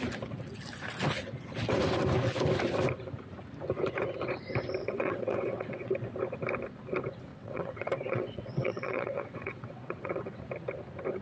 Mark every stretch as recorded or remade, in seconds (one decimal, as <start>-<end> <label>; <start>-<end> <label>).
0.0-4.8 recorded; 4.8-5.9 remade; 5.9-7.3 recorded; 7.3-10.4 remade; 10.4-11.2 recorded